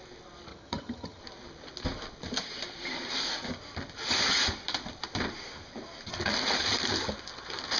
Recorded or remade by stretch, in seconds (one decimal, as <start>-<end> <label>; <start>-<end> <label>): 0.0-0.5 recorded; 0.5-1.2 remade; 1.2-7.8 recorded